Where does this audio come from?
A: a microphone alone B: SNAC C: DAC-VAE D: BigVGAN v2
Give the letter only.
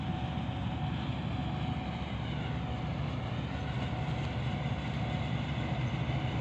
A